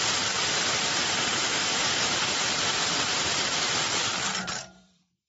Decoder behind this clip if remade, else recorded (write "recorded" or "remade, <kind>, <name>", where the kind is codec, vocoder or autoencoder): remade, vocoder, BigVGAN v2